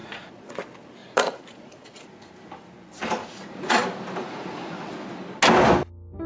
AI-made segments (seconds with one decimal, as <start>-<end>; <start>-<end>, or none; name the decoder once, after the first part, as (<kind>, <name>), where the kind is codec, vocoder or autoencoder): 0.0-0.5 (vocoder, Vocos); 1.0-2.3; 3.2-3.8; 4.2-4.9